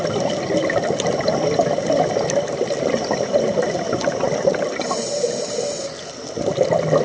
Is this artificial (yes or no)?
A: no